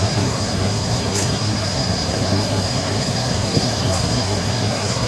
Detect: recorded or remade remade